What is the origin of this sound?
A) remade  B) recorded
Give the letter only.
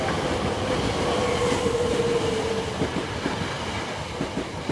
B